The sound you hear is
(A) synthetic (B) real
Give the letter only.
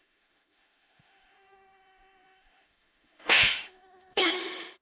A